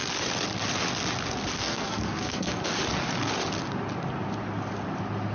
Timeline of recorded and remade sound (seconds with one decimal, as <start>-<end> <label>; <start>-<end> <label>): 0.0-1.5 recorded; 1.5-2.6 remade; 2.6-5.3 recorded